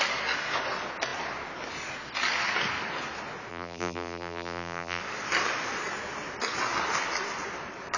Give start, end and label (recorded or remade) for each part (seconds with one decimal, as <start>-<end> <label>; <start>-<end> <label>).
0.0-3.5 recorded; 3.5-5.0 remade; 5.0-8.0 recorded